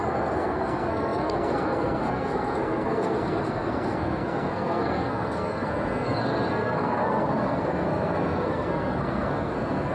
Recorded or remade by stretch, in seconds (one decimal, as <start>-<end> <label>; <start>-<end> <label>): 0.0-9.9 remade